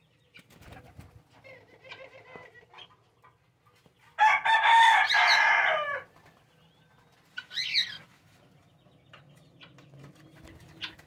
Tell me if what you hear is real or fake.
real